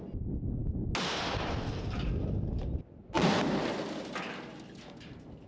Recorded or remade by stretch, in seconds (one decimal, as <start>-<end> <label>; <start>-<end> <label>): 0.0-5.5 recorded